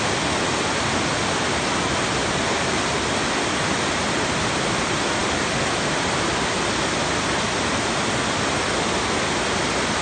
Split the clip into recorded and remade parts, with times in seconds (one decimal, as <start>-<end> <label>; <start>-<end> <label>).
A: 0.0-5.2 recorded; 5.2-6.7 remade; 6.7-10.0 recorded